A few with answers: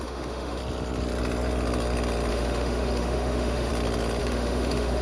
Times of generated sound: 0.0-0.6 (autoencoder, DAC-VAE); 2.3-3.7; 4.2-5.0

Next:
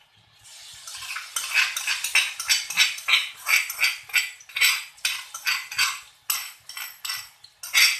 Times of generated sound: none

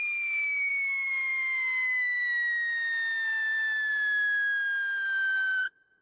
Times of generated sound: none

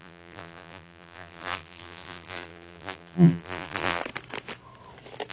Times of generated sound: 0.0-4.0 (vocoder, BigVGAN v2)